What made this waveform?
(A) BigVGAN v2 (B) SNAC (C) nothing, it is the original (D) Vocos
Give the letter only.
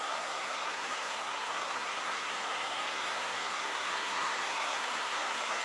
B